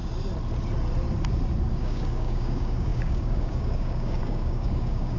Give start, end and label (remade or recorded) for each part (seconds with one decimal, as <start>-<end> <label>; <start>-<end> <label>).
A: 0.0-1.7 recorded; 1.7-5.2 remade